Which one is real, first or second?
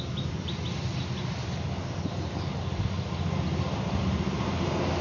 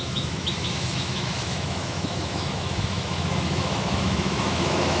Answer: first